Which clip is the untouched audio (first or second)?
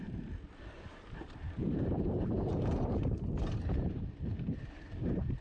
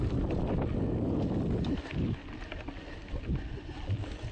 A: second